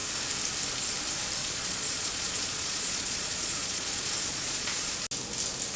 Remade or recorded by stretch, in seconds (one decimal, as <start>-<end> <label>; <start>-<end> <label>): 0.0-1.4 recorded; 1.4-4.9 remade; 4.9-5.8 recorded